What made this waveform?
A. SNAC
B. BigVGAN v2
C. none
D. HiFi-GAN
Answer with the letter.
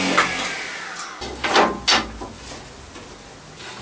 C